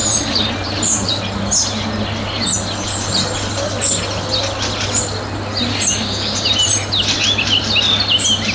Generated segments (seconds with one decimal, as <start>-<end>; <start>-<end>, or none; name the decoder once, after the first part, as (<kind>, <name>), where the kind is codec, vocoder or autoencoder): 0.0-1.2 (vocoder, BigVGAN v2)

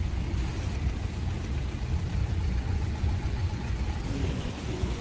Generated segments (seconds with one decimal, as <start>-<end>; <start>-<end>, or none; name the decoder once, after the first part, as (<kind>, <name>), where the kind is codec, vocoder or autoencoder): 2.2-3.8 (vocoder, Vocos); 4.2-5.0

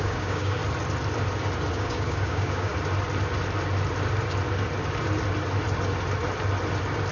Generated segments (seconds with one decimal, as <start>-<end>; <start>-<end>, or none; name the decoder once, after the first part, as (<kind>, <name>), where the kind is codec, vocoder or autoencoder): 0.0-0.6 (codec, DAC); 1.7-2.7

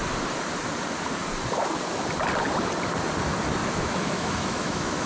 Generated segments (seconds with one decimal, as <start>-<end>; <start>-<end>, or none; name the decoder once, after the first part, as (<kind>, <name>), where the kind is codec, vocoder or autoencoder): 3.6-5.1 (autoencoder, DAC-VAE)

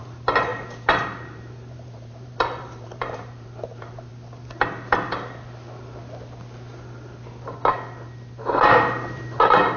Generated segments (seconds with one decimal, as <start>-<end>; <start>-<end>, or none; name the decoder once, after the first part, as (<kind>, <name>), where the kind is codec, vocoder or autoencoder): 0.5-4.1 (vocoder, BigVGAN v2); 8.7-9.4